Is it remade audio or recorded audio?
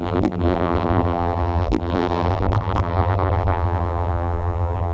remade